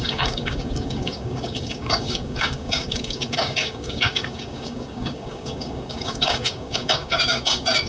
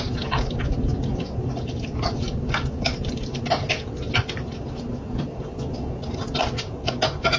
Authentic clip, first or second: second